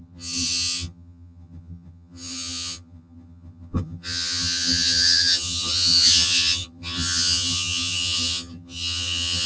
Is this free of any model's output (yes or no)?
no